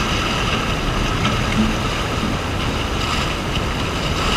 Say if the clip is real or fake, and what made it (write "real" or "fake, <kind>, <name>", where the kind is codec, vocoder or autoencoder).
real